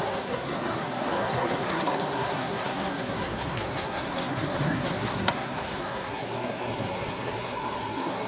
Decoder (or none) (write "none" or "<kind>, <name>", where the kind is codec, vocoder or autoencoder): codec, SNAC